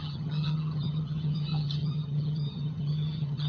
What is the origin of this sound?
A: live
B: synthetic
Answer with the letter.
B